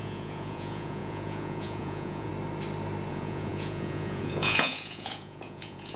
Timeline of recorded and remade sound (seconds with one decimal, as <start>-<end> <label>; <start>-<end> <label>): 0.0-2.3 remade; 2.3-3.1 recorded; 3.1-6.0 remade